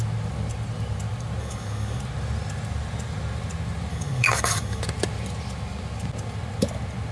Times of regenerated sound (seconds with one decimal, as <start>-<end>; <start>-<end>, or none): 1.4-2.0; 3.9-4.8